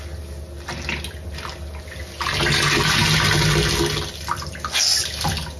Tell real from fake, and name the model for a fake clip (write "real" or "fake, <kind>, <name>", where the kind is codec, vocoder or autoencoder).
real